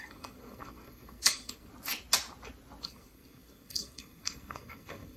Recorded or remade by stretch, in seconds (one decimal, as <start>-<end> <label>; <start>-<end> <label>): 0.0-1.7 remade; 1.7-2.8 recorded; 2.8-5.2 remade